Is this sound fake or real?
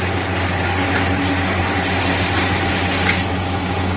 real